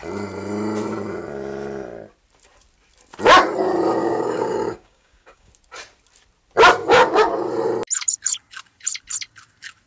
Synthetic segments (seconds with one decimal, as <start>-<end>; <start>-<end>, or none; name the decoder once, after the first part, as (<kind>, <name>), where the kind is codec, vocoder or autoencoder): 4.0-5.5 (codec, DAC); 6.8-7.5